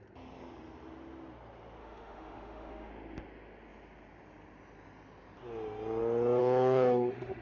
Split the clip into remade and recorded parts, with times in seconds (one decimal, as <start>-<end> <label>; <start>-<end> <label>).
0.0-1.8 recorded; 1.8-2.9 remade; 2.9-6.4 recorded; 6.4-7.4 remade